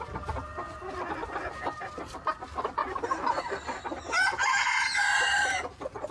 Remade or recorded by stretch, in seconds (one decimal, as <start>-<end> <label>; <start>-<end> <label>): 0.0-6.1 recorded